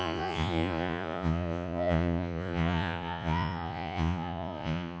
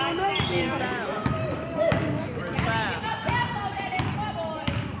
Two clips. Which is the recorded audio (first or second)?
second